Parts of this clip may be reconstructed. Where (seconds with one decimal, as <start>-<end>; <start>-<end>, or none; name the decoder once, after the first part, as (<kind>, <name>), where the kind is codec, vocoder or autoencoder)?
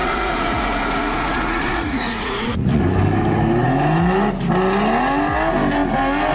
0.0-2.8 (vocoder, Vocos)